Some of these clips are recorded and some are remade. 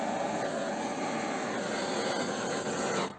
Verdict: recorded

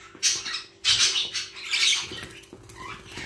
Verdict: recorded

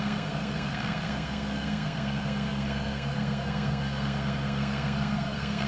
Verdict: remade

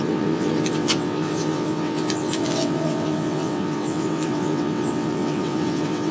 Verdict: remade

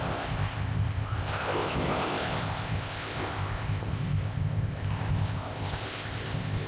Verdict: remade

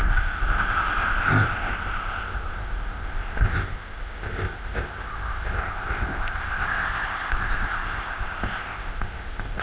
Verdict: remade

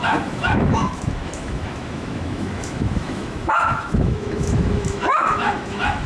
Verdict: remade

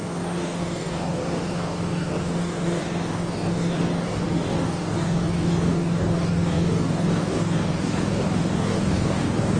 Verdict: remade